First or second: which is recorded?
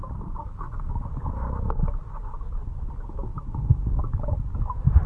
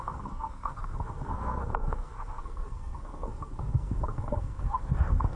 first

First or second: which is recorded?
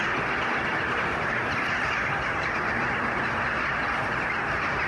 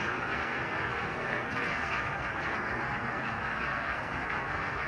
first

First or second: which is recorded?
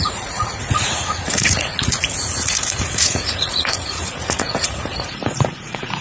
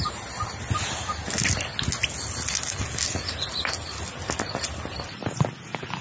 second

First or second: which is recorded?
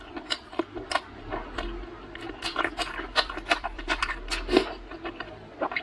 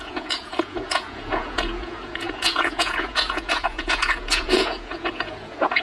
first